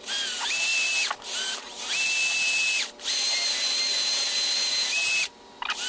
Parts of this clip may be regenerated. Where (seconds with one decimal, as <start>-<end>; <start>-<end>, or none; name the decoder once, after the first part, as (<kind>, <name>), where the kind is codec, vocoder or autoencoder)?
none